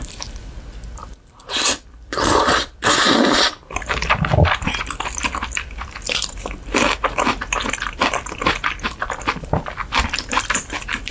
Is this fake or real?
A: fake